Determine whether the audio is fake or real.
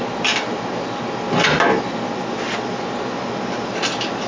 real